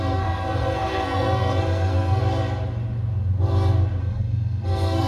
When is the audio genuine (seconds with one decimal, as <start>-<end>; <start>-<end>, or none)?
2.2-4.0